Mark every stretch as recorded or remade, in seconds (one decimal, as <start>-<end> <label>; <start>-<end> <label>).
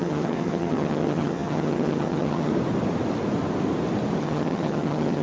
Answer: 0.0-2.5 remade; 2.5-4.2 recorded; 4.2-5.2 remade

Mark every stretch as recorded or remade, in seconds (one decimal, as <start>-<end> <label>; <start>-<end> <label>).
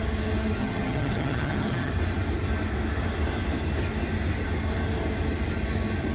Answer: 0.0-0.6 recorded; 0.6-1.9 remade; 1.9-6.1 recorded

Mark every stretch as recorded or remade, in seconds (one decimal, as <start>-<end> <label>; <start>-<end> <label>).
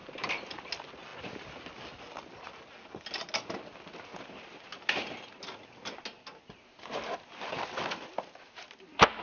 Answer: 0.0-9.2 recorded